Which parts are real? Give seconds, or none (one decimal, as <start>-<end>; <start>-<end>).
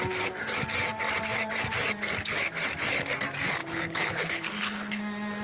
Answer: 0.0-3.6; 5.0-5.4